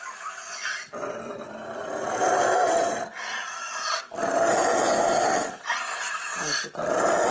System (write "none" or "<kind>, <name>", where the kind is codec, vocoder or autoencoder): none